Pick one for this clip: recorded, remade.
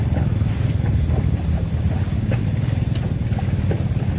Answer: recorded